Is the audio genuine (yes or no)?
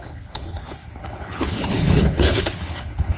no